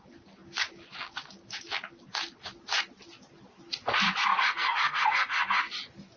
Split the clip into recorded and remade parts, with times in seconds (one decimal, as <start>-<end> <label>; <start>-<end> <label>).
0.0-4.3 recorded; 4.3-5.6 remade; 5.6-6.2 recorded